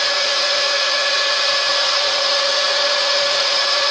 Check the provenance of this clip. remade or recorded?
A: remade